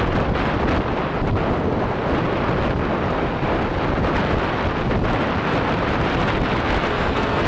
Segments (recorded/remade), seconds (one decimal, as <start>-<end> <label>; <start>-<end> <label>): 0.0-6.8 recorded; 6.8-7.5 remade